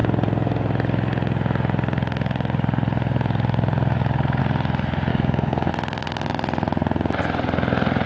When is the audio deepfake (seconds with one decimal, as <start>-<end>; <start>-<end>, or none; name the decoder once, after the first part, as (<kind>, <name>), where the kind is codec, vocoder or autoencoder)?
5.1-5.7 (codec, DAC)